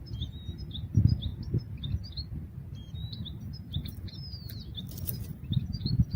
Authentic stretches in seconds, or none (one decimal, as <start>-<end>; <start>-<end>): 0.0-3.0; 3.9-5.3